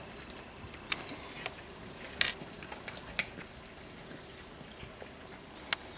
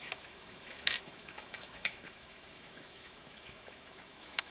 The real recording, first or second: first